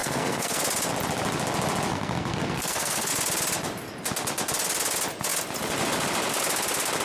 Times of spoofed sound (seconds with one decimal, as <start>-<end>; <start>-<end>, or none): 0.0-0.6; 1.9-3.1